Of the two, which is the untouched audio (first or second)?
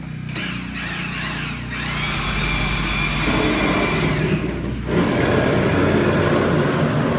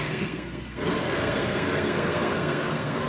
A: first